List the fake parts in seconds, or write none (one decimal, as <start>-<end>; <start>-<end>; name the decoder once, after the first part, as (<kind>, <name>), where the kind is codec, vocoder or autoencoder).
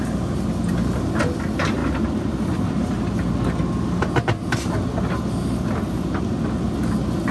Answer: none